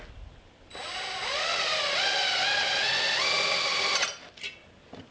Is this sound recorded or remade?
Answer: recorded